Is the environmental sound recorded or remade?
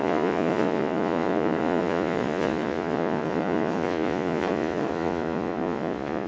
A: remade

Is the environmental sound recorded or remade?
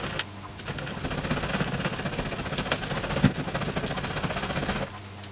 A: recorded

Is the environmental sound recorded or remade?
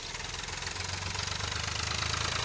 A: recorded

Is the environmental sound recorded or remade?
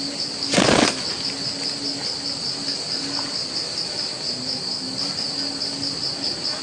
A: recorded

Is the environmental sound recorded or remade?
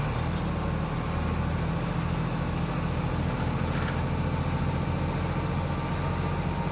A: recorded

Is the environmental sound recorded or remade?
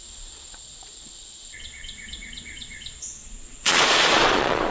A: remade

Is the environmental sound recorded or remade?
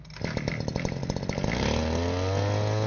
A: recorded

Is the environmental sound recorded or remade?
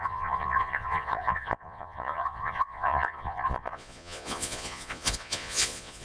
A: remade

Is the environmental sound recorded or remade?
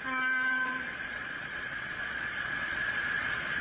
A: remade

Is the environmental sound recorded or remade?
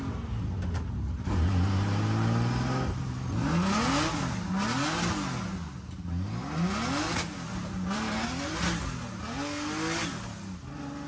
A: recorded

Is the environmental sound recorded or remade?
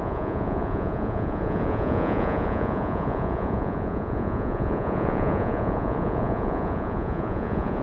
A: remade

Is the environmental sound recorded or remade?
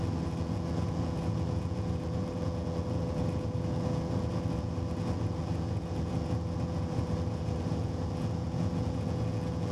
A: remade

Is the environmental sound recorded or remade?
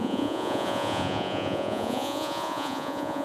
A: remade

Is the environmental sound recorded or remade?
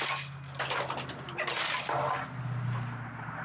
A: recorded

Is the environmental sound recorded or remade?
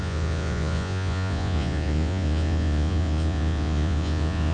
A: remade